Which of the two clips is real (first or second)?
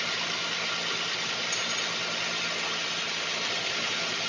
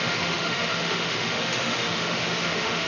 first